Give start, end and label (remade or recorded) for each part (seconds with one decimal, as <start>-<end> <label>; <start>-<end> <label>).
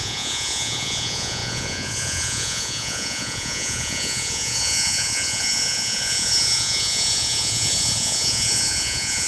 0.0-9.3 remade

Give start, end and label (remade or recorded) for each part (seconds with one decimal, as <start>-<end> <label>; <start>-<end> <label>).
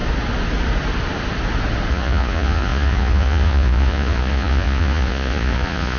0.0-1.9 recorded; 1.9-6.0 remade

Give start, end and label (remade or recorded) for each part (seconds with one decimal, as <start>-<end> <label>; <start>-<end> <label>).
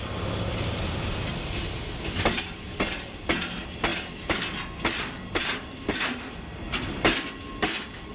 0.0-8.1 recorded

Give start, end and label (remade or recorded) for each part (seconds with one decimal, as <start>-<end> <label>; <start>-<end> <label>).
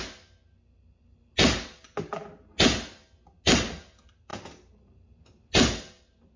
0.0-6.4 recorded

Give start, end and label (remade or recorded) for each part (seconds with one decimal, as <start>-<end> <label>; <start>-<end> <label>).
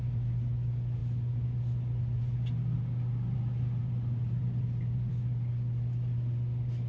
0.0-6.9 recorded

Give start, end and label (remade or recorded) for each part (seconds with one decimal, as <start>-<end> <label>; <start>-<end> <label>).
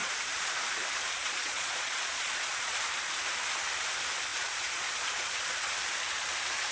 0.0-0.5 remade; 0.5-1.2 recorded; 1.2-2.8 remade; 2.8-4.3 recorded; 4.3-5.7 remade; 5.7-6.7 recorded